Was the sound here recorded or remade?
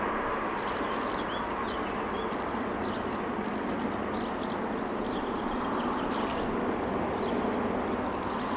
recorded